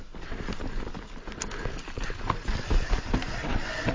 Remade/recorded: recorded